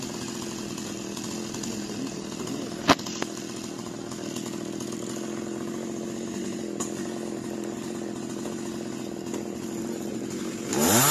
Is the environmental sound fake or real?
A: real